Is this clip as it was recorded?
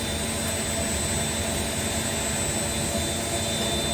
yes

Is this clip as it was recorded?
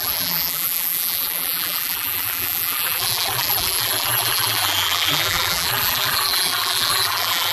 no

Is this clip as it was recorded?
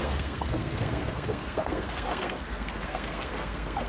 no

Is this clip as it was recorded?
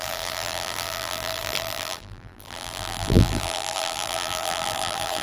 no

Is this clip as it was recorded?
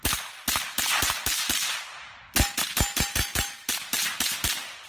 yes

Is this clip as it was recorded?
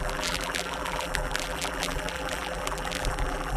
no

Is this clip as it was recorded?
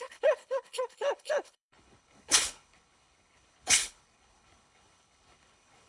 no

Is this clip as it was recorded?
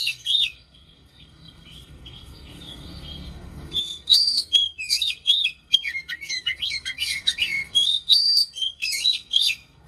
no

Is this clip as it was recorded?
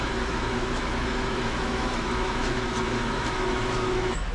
no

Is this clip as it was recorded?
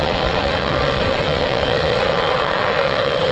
no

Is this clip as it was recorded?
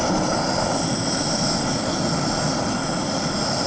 yes